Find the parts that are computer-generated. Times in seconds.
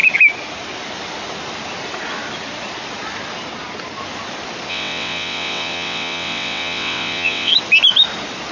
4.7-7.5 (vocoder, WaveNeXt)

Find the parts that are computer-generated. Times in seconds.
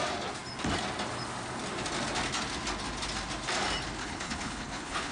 4.0-5.1 (codec, HILCodec)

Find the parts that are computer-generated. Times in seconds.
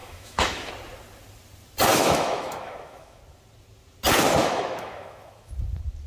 0.0-0.7 (autoencoder, DAC-VAE); 1.9-3.2; 4.4-5.5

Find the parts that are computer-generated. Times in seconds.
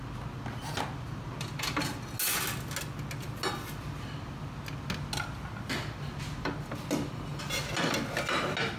none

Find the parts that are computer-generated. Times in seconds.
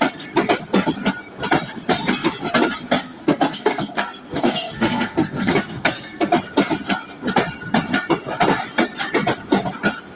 3.0-6.3 (codec, SNAC)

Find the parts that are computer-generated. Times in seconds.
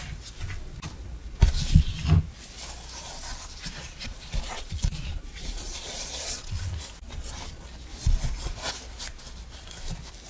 1.2-1.9 (vocoder, Vocos); 3.3-6.6; 7.9-8.7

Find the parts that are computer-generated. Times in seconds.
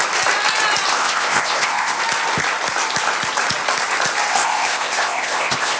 0.9-2.0 (codec, ZipCodec); 4.3-5.8